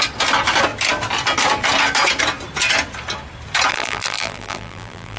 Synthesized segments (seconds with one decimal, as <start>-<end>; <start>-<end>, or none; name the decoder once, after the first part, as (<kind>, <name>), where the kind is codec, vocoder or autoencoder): 3.7-5.2 (vocoder, BigVGAN v2)

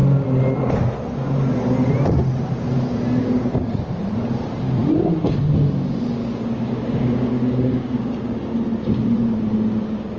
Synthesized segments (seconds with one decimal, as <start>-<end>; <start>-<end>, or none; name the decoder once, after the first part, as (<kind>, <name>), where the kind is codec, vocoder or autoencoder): 3.2-3.8 (codec, DAC); 6.2-8.4